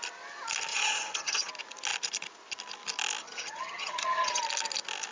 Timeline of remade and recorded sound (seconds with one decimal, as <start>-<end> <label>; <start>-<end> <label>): 0.0-0.7 recorded; 0.7-1.5 remade; 1.5-3.2 recorded; 3.2-4.4 remade; 4.4-5.1 recorded